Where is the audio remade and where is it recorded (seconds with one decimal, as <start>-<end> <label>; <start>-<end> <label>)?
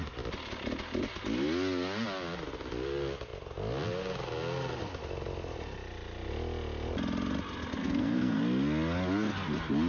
0.0-7.8 recorded; 7.8-8.4 remade; 8.4-9.9 recorded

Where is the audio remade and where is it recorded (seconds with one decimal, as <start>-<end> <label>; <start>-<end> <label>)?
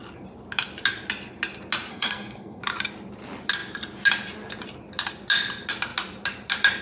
0.0-1.9 recorded; 1.9-2.6 remade; 2.6-6.8 recorded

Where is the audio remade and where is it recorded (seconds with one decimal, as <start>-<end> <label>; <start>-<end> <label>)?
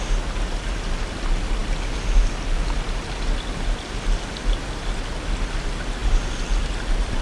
0.0-7.2 recorded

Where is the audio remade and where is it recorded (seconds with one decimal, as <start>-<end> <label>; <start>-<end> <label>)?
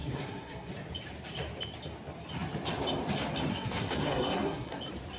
0.0-0.7 remade; 0.7-3.5 recorded; 3.5-4.8 remade; 4.8-5.2 recorded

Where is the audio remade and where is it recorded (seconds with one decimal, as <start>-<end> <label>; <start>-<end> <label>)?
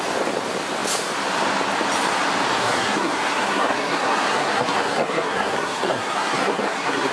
0.0-2.6 recorded; 2.6-7.1 remade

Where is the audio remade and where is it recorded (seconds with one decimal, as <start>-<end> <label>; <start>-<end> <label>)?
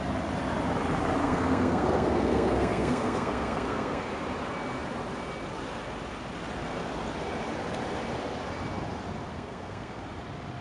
0.0-1.2 recorded; 1.2-4.0 remade; 4.0-9.3 recorded; 9.3-10.0 remade; 10.0-10.6 recorded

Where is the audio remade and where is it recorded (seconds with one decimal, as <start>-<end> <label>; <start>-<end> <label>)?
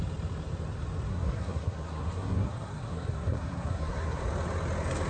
0.0-1.1 recorded; 1.1-4.2 remade; 4.2-5.1 recorded